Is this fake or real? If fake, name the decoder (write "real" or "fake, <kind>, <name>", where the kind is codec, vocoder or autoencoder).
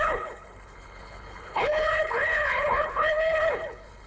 fake, codec, HILCodec